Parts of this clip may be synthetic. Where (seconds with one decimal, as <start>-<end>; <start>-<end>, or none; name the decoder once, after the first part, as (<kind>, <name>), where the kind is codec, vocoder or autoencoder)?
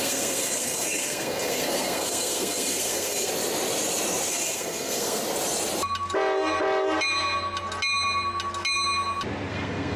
0.0-3.3 (codec, SNAC); 4.3-5.2; 9.5-10.0